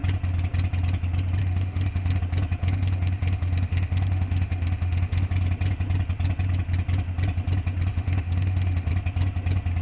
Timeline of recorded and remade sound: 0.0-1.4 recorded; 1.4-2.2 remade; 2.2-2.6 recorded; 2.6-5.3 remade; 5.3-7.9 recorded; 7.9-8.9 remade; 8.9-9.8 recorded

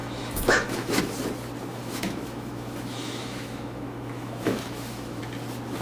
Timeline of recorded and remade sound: 0.0-1.0 remade; 1.0-1.7 recorded; 1.7-5.2 remade; 5.2-5.8 recorded